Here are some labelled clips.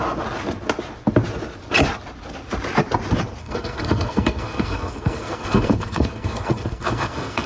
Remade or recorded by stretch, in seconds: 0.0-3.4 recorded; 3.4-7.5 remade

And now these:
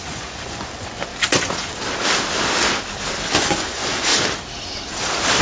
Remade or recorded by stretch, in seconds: 0.0-1.1 remade; 1.1-3.3 recorded; 3.3-4.1 remade; 4.1-5.4 recorded

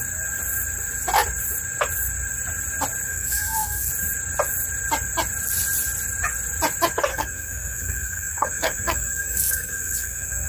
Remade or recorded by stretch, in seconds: 0.0-3.1 recorded; 3.1-3.9 remade; 3.9-7.1 recorded; 7.1-10.5 remade

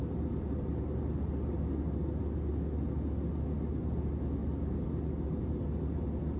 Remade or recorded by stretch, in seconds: 0.0-6.4 recorded

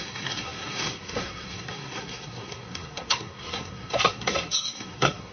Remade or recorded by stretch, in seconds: 0.0-5.3 remade

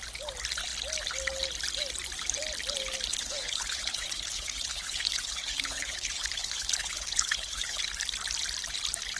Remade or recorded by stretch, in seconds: 0.0-3.1 recorded; 3.1-7.8 remade; 7.8-9.2 recorded

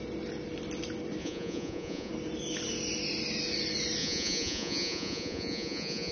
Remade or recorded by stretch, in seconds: 0.0-1.2 recorded; 1.2-2.1 remade; 2.1-4.0 recorded; 4.0-6.1 remade